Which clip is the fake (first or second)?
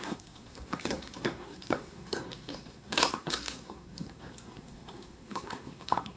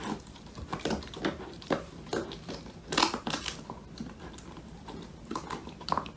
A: first